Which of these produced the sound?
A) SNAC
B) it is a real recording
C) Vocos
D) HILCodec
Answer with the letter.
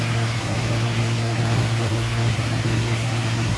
A